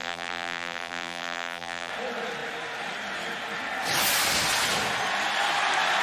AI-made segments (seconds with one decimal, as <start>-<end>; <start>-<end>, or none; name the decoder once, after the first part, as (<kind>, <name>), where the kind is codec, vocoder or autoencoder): 0.0-1.9 (vocoder, BigVGAN v2)